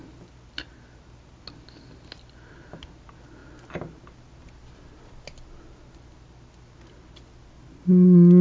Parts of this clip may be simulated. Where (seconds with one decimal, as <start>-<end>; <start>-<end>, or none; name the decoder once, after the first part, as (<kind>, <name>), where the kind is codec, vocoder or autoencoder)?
none